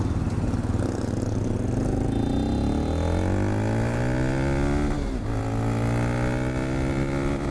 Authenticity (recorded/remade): recorded